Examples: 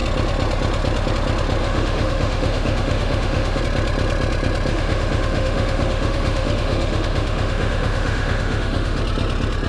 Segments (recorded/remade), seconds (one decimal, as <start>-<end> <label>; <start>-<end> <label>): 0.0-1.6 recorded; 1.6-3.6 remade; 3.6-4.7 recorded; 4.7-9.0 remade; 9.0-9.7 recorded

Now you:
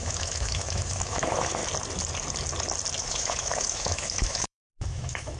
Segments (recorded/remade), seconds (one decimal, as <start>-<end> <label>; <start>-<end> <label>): 0.0-1.6 remade; 1.6-3.0 recorded; 3.0-5.4 remade

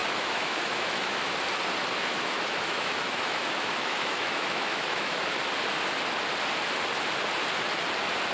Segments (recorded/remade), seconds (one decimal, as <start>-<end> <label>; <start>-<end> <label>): 0.0-1.4 remade; 1.4-2.1 recorded; 2.1-5.2 remade; 5.2-8.3 recorded

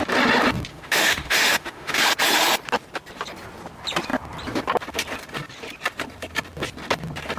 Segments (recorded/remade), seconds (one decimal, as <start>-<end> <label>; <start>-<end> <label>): 0.0-0.7 recorded; 0.7-2.0 remade; 2.0-7.4 recorded